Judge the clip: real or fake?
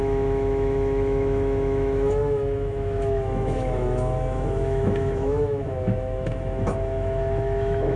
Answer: fake